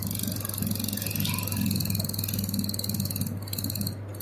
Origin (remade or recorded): recorded